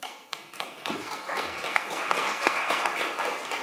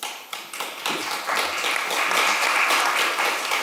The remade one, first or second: first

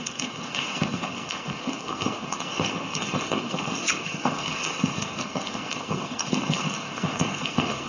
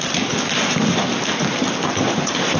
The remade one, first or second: first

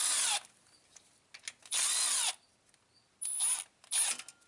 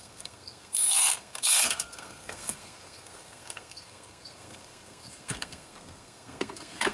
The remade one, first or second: second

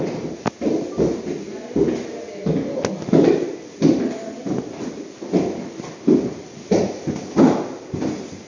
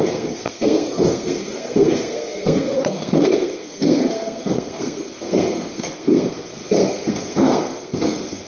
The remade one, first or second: second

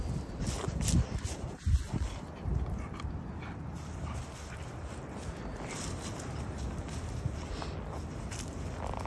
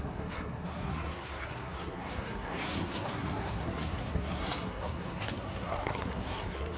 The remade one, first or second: second